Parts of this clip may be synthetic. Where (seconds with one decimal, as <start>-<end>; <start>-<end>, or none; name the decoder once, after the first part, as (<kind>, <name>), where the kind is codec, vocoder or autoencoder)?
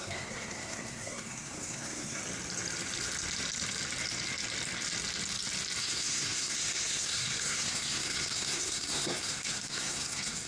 0.0-2.2 (codec, SNAC); 5.8-10.5